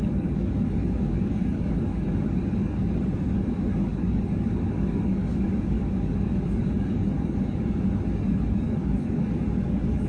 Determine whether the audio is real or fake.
fake